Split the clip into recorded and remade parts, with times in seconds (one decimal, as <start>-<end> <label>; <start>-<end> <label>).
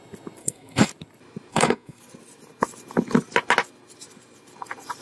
0.0-0.4 recorded; 0.4-0.9 remade; 0.9-1.5 recorded; 1.5-2.0 remade; 2.0-5.0 recorded